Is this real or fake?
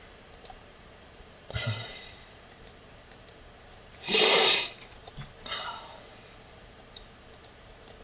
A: fake